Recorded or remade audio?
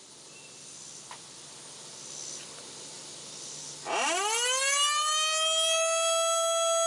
recorded